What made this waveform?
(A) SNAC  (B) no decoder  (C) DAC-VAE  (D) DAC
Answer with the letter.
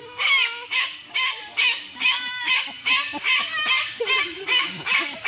D